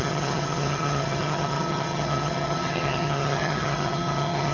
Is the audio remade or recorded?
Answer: remade